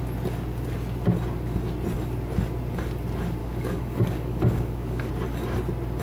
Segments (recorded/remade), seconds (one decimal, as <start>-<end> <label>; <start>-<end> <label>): 0.0-3.4 recorded; 3.4-5.1 remade; 5.1-6.0 recorded